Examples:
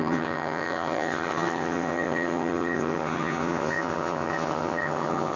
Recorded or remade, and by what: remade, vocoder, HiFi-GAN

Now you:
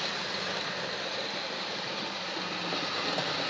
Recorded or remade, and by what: recorded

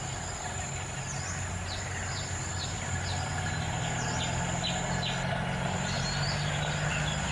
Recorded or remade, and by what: recorded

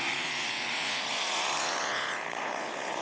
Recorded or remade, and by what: remade, vocoder, Vocos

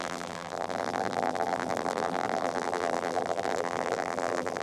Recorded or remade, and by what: remade, vocoder, BigVGAN v2